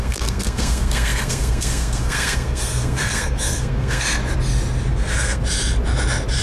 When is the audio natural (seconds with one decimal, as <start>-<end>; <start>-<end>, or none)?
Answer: 4.2-4.9; 5.4-6.4